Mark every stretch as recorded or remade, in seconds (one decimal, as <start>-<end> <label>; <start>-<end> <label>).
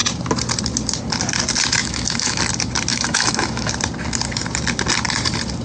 0.0-1.8 recorded; 1.8-2.4 remade; 2.4-2.9 recorded; 2.9-3.7 remade; 3.7-5.6 recorded